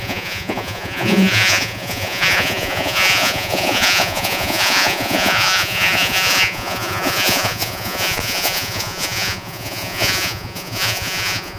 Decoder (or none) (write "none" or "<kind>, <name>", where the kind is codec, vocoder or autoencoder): vocoder, Vocos